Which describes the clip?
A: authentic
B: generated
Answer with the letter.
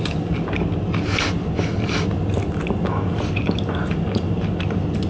A